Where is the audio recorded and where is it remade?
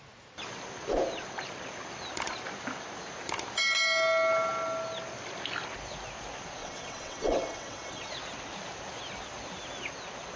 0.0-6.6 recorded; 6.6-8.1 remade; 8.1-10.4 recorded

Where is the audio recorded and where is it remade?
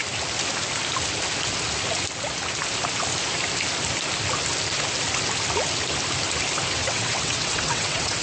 0.0-6.8 recorded; 6.8-8.2 remade